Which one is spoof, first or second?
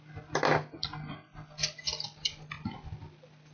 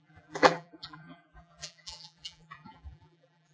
second